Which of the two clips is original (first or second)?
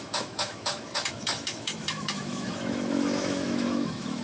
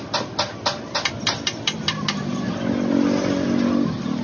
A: second